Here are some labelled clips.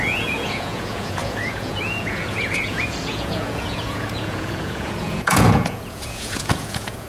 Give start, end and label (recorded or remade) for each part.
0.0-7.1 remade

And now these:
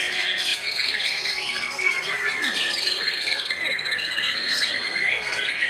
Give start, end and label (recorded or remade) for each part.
0.0-5.7 remade

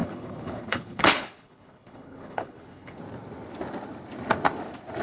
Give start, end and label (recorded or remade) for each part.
0.0-3.0 remade; 3.0-5.0 recorded

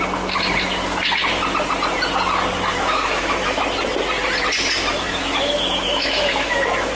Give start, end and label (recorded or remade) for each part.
0.0-2.7 recorded; 2.7-3.6 remade; 3.6-4.9 recorded; 4.9-6.9 remade

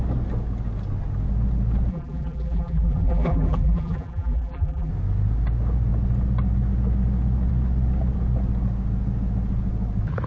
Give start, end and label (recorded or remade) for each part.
0.0-1.9 recorded; 1.9-4.9 remade; 4.9-10.3 recorded

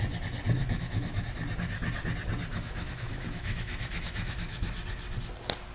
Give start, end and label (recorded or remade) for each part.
0.0-0.6 recorded; 0.6-1.2 remade; 1.2-2.5 recorded; 2.5-4.7 remade; 4.7-5.7 recorded

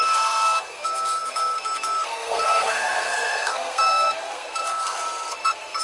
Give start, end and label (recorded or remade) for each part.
0.0-5.8 remade

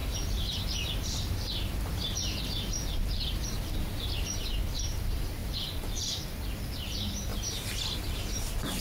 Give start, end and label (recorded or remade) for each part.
0.0-7.3 remade; 7.3-8.2 recorded; 8.2-8.8 remade